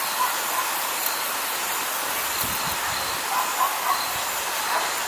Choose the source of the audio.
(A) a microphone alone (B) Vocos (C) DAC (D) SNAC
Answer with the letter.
A